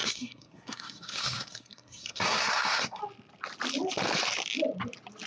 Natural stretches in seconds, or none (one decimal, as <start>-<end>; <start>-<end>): 3.0-5.3